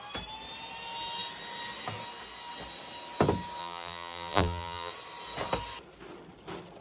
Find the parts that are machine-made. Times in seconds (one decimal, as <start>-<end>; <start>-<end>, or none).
3.6-4.9

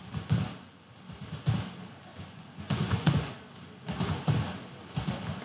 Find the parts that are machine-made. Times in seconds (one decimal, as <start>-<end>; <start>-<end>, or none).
2.1-3.3

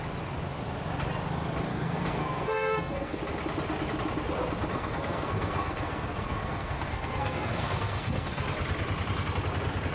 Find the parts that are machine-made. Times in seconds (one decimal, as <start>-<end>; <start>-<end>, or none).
1.7-3.2; 4.7-8.4

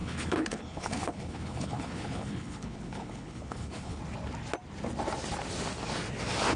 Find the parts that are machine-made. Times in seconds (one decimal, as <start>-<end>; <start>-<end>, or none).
0.0-4.0

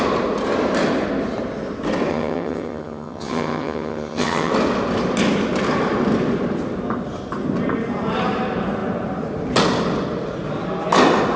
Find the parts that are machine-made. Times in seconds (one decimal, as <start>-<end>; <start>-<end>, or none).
2.1-4.5

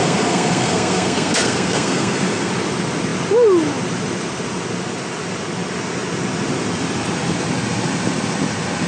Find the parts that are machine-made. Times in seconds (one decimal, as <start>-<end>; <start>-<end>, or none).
0.0-2.5

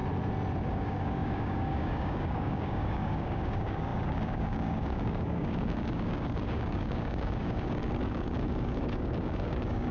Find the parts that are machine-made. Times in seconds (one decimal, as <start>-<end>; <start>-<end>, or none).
0.7-9.9